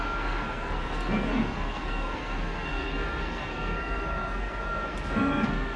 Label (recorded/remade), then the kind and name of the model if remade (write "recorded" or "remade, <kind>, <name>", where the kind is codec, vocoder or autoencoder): remade, codec, SNAC